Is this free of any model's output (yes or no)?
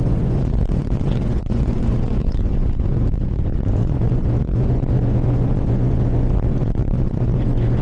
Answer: no